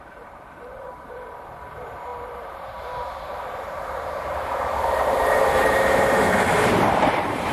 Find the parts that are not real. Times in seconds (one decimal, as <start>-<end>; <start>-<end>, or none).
0.0-7.5